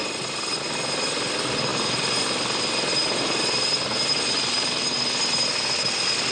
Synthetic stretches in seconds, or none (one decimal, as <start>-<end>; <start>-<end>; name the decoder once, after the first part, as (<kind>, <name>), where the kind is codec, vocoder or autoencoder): none